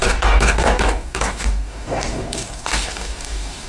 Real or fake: fake